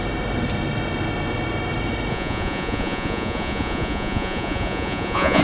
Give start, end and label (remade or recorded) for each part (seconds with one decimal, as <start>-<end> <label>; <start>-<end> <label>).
0.0-2.1 recorded; 2.1-5.4 remade